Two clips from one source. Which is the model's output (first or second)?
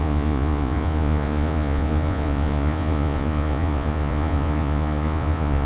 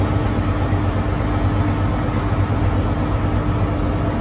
first